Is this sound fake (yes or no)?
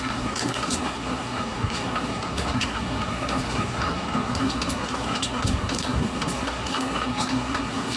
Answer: yes